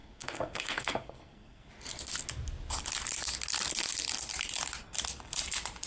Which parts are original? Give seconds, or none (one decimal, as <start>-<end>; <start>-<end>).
1.7-5.9